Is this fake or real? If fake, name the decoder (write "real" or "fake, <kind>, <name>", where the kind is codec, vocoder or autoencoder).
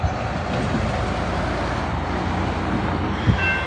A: real